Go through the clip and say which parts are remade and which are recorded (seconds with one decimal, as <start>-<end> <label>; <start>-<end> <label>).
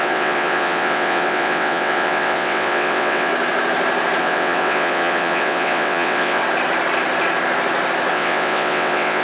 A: 0.0-3.3 remade; 3.3-4.2 recorded; 4.2-6.4 remade; 6.4-8.1 recorded; 8.1-9.2 remade